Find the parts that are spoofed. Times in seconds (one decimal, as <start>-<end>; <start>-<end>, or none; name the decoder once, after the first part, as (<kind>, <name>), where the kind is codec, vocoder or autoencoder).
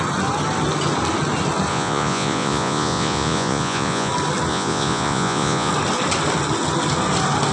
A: 1.7-4.1 (vocoder, Vocos); 4.5-5.7